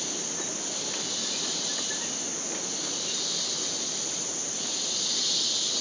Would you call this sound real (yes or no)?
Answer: yes